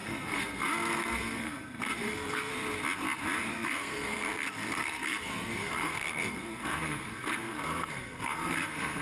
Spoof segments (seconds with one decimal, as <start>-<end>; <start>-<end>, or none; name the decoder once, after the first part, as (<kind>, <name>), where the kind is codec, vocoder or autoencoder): 0.0-2.5 (codec, SNAC); 3.5-9.0